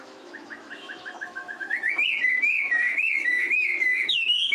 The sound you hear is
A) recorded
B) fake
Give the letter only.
B